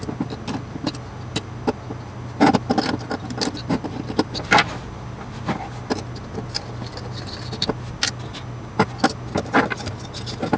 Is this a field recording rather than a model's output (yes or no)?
yes